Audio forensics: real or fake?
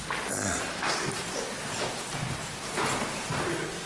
real